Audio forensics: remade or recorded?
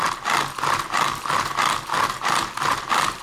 recorded